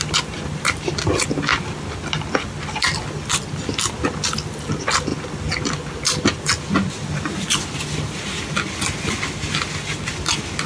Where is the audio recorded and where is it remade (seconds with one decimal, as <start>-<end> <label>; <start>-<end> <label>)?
0.0-10.7 recorded